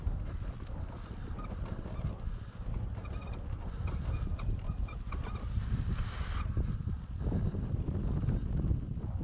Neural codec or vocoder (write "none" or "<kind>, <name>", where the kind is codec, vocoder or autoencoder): none